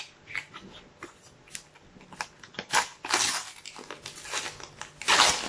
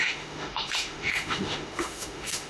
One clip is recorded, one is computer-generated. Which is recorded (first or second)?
first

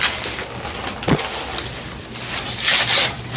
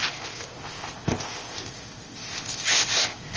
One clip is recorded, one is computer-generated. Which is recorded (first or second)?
first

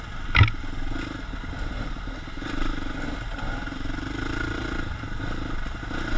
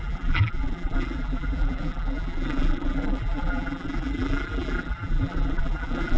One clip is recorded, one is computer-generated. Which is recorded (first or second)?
first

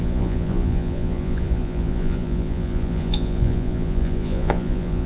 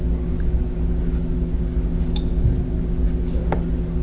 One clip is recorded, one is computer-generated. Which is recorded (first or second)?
second